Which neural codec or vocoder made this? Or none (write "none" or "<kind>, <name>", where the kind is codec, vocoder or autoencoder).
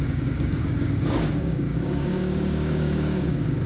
codec, DAC